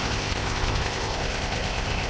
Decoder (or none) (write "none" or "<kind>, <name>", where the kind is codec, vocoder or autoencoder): codec, ZipCodec